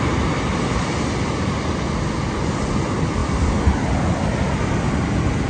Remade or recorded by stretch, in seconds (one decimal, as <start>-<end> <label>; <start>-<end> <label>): 0.0-5.5 recorded